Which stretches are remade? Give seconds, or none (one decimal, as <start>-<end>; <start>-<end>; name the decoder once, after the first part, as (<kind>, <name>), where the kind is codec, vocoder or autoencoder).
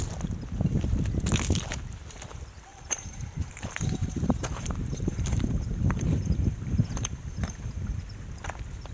2.7-8.0 (vocoder, BigVGAN v2)